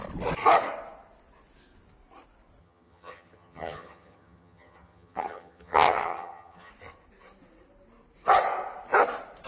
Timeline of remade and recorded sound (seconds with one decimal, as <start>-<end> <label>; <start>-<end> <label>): 0.0-2.6 recorded; 2.6-6.7 remade; 6.7-9.5 recorded